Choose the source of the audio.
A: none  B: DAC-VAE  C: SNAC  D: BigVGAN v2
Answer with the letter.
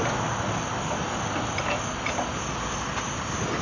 A